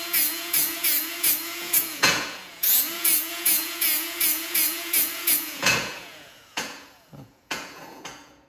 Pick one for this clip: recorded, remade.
remade